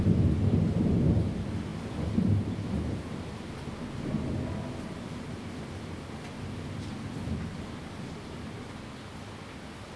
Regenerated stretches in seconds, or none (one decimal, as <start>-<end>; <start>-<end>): none

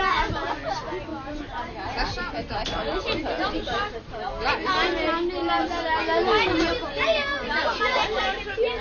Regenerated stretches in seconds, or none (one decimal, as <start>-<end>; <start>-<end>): none

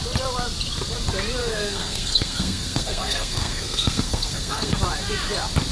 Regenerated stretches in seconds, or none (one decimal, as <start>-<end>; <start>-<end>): 1.4-4.8

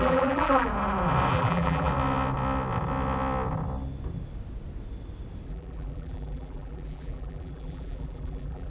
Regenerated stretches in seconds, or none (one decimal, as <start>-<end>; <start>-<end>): 0.0-0.7; 1.3-1.9; 5.5-8.7

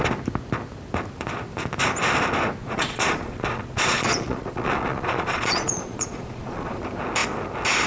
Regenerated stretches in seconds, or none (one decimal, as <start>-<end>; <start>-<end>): 2.6-6.8

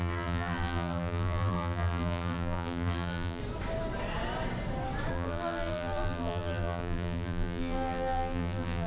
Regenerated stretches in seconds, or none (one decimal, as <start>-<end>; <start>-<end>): 0.0-3.4; 5.1-8.9

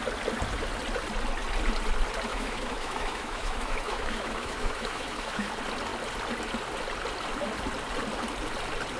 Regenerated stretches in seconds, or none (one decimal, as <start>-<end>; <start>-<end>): 2.3-5.5